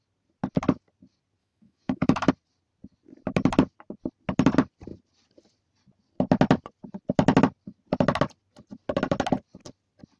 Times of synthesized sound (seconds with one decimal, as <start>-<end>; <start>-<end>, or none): 1.4-2.3